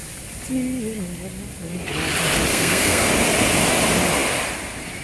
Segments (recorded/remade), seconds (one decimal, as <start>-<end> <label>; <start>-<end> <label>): 0.0-2.5 recorded; 2.5-3.1 remade; 3.1-5.0 recorded